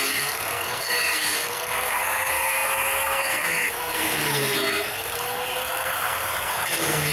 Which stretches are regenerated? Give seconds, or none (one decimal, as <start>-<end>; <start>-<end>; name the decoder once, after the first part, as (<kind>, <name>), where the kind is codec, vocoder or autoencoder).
0.0-7.1 (codec, SNAC)